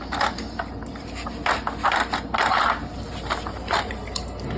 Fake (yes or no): no